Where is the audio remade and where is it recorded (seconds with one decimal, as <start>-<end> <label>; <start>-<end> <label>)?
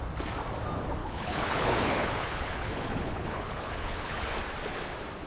0.0-1.0 recorded; 1.0-4.2 remade; 4.2-5.3 recorded